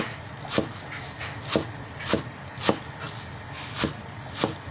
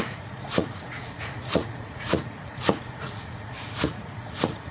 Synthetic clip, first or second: second